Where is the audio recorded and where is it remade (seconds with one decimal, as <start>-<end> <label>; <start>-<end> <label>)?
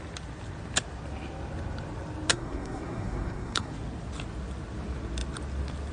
0.0-2.3 recorded; 2.3-3.7 remade; 3.7-5.9 recorded